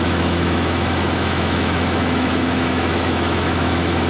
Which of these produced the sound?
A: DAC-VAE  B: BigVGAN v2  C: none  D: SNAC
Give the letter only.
A